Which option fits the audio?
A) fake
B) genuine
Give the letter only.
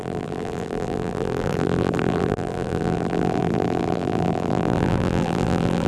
A